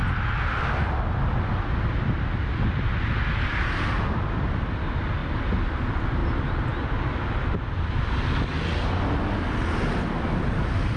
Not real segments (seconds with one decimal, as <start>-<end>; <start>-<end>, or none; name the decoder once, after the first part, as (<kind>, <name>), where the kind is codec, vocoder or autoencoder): none